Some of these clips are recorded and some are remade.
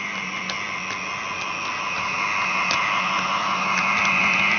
recorded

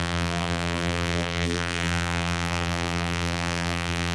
remade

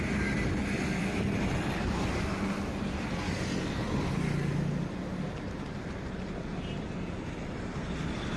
recorded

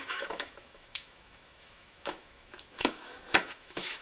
remade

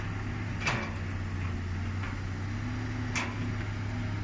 recorded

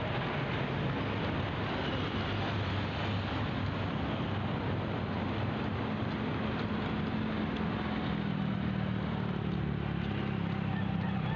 recorded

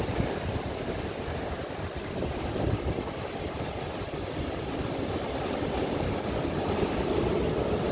recorded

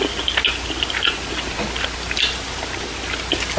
recorded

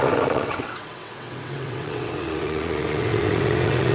remade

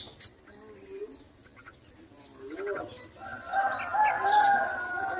recorded